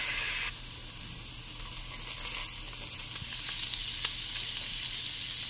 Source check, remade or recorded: recorded